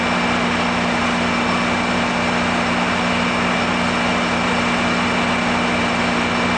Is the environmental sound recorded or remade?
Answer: recorded